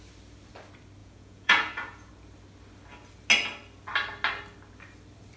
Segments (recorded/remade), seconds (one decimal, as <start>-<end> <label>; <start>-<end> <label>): 0.0-1.0 recorded; 1.0-2.1 remade; 2.1-5.4 recorded